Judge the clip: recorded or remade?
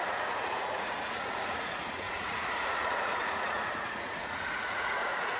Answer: remade